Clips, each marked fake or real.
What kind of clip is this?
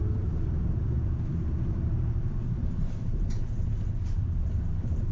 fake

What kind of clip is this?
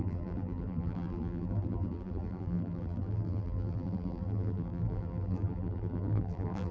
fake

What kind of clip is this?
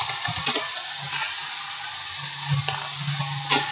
real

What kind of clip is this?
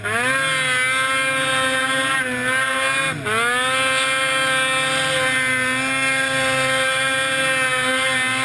real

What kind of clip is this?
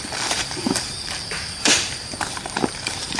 fake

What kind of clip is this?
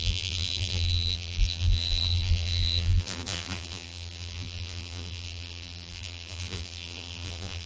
fake